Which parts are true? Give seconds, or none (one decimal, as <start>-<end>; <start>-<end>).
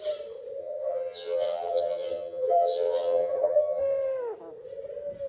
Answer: 0.0-0.6; 3.8-5.3